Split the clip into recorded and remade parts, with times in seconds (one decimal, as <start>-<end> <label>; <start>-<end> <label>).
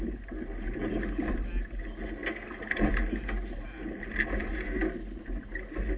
0.0-6.0 recorded